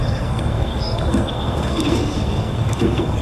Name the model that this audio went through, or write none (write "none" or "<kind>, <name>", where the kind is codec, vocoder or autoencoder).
codec, SNAC